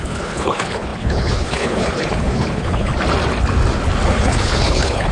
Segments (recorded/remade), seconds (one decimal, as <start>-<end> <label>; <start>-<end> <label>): 0.0-2.9 remade; 2.9-4.2 recorded; 4.2-5.1 remade